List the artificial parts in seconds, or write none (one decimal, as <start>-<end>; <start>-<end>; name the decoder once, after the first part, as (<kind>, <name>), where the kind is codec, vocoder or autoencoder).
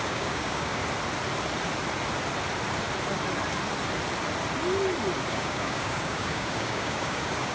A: 0.0-0.8 (codec, DAC); 5.3-7.5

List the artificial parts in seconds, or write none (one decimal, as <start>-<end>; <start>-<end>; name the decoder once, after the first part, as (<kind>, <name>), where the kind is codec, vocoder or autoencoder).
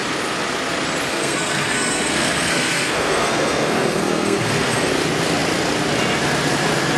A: 1.1-4.9 (codec, SNAC)